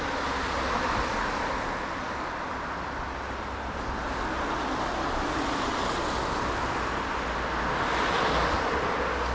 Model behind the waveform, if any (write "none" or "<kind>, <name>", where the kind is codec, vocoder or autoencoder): none